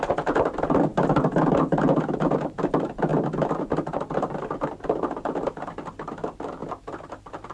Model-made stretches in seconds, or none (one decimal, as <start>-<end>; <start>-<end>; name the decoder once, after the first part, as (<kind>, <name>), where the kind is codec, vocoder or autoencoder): none